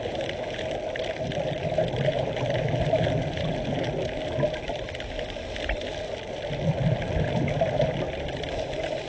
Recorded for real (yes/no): yes